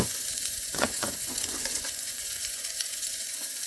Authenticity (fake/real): fake